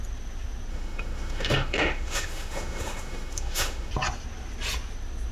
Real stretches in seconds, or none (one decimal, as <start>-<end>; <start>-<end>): 0.0-0.7; 3.9-5.3